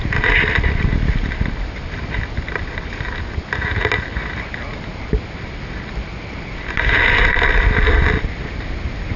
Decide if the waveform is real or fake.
real